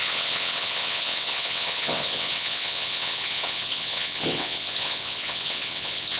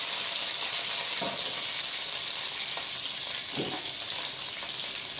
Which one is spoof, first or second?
first